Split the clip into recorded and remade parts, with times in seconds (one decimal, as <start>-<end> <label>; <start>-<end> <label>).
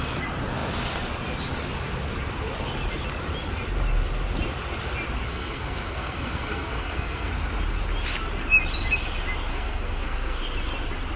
0.0-5.3 recorded; 5.3-7.3 remade; 7.3-9.5 recorded; 9.5-10.4 remade; 10.4-11.2 recorded